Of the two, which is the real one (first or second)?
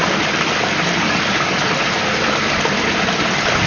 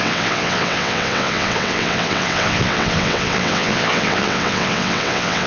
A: first